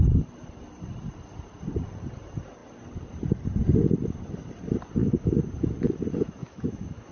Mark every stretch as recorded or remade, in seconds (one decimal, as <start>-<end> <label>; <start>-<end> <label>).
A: 0.0-5.0 recorded; 5.0-5.5 remade; 5.5-6.4 recorded; 6.4-7.1 remade

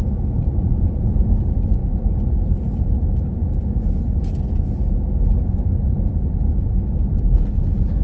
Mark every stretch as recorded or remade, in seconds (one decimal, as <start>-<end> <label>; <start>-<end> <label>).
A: 0.0-0.7 recorded; 0.7-1.3 remade; 1.3-8.0 recorded

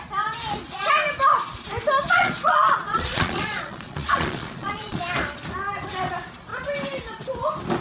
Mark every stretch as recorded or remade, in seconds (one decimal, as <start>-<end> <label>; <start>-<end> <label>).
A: 0.0-2.1 recorded; 2.1-5.0 remade; 5.0-7.8 recorded

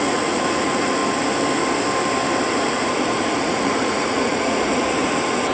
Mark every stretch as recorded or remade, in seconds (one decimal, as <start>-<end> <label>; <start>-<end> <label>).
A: 0.0-1.0 remade; 1.0-2.5 recorded; 2.5-5.5 remade

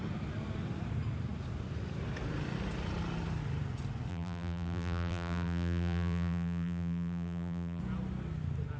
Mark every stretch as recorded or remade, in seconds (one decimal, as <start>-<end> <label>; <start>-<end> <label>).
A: 0.0-4.1 recorded; 4.1-7.8 remade; 7.8-8.8 recorded

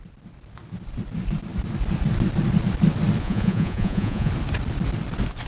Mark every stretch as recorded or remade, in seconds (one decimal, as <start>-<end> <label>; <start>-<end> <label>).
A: 0.0-3.2 recorded; 3.2-4.3 remade; 4.3-5.5 recorded

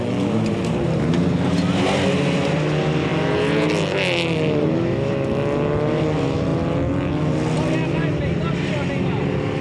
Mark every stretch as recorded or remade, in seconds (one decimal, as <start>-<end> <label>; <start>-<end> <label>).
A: 0.0-9.6 recorded

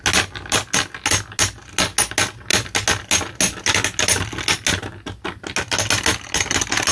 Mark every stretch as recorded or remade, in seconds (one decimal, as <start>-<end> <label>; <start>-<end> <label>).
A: 0.0-6.9 recorded